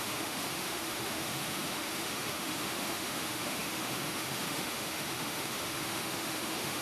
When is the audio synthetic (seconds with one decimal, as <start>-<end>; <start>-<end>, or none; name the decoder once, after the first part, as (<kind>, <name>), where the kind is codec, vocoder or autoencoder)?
0.0-6.8 (autoencoder, DAC-VAE)